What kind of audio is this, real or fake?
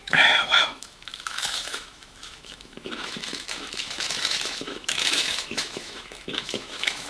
fake